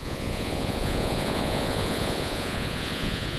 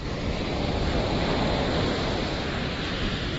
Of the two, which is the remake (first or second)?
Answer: first